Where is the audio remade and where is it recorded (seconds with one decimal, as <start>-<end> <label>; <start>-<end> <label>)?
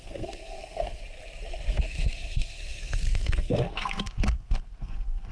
0.0-1.0 remade; 1.0-1.7 recorded; 1.7-5.3 remade